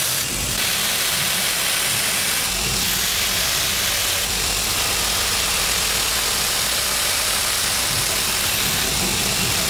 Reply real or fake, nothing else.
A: real